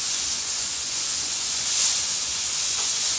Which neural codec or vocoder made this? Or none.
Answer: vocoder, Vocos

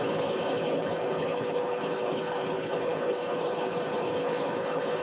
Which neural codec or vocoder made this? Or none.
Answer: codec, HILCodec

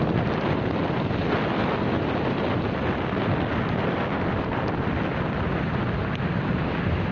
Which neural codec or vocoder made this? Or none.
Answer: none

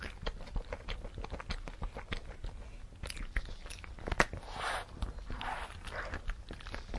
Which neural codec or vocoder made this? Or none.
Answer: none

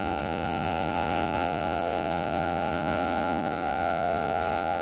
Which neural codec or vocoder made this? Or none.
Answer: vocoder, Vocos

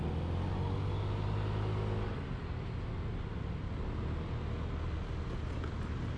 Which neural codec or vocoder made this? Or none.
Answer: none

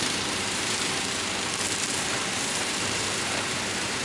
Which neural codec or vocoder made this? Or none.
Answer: vocoder, BigVGAN v2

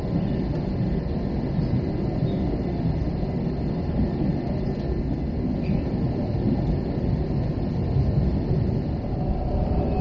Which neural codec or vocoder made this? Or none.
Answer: none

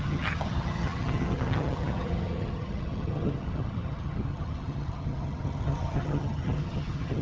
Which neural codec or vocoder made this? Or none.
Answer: vocoder, HiFi-GAN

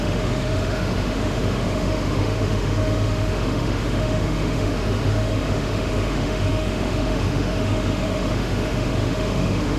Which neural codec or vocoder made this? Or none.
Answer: autoencoder, DAC-VAE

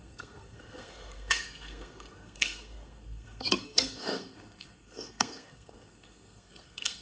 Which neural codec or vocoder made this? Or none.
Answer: codec, SNAC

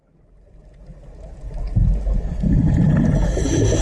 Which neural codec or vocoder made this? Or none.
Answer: none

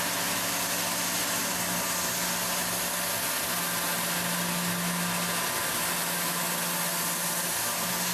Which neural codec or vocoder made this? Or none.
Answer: none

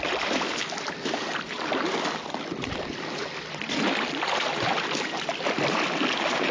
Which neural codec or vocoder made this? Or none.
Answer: none